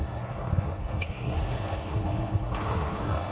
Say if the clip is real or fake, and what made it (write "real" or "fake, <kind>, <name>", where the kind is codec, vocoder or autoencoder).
fake, codec, SNAC